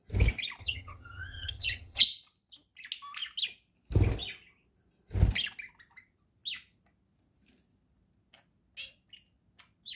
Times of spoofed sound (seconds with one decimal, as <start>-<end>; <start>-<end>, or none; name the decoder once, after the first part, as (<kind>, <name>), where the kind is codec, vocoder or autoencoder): 0.6-2.0 (vocoder, HiFi-GAN)